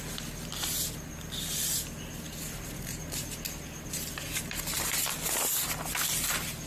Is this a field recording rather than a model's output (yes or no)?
yes